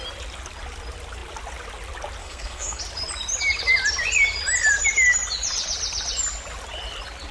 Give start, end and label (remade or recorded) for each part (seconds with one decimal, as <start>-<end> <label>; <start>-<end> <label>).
0.0-2.2 recorded; 2.2-2.8 remade; 2.8-7.3 recorded